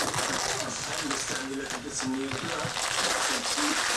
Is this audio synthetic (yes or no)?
no